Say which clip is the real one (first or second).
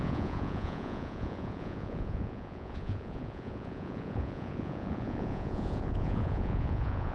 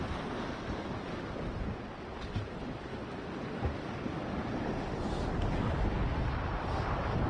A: second